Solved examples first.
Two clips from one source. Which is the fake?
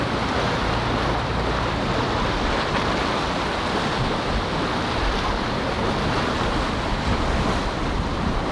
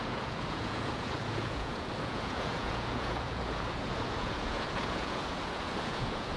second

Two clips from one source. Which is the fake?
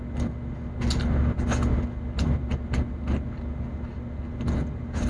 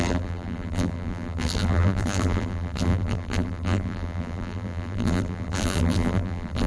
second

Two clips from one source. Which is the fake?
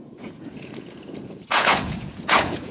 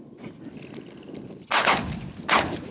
first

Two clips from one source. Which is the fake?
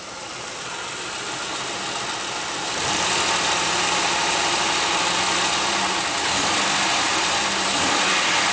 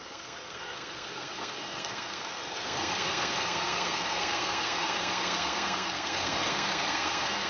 second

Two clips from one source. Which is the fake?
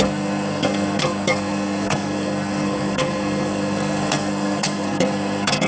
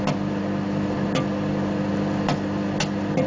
first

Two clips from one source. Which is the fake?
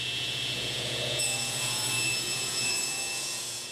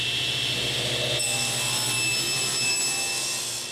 first